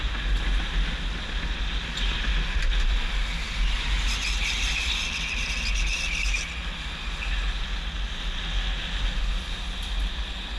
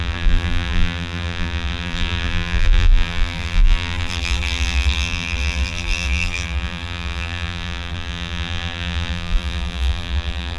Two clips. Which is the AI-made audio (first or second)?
second